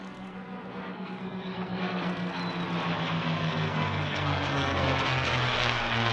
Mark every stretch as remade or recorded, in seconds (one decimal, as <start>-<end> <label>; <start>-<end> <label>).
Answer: 0.0-2.4 remade; 2.4-3.0 recorded; 3.0-6.1 remade